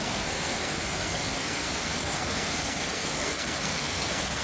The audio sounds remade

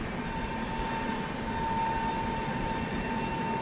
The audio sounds recorded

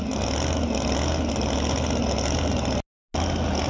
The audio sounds recorded